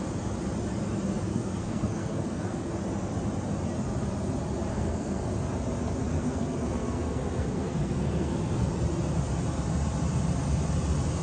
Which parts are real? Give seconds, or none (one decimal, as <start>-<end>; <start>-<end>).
0.0-1.3; 2.7-4.7; 5.3-6.1; 8.7-11.2